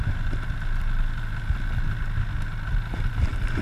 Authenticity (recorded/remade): recorded